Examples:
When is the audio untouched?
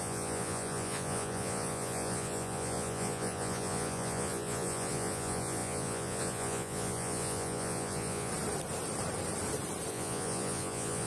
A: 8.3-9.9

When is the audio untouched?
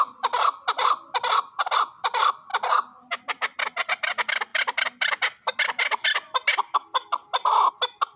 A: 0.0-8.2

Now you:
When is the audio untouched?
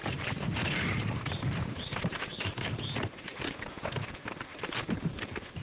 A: 3.4-4.5; 5.1-5.6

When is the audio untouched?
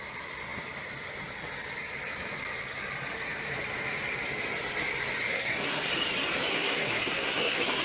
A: 0.0-5.3; 5.9-6.5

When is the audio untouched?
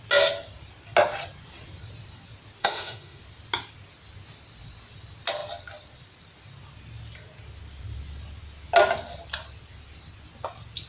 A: 0.0-2.6; 3.2-10.9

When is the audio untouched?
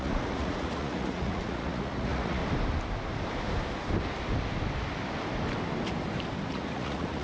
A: 2.4-6.5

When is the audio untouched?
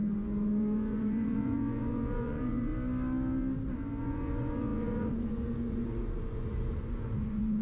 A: 2.7-4.0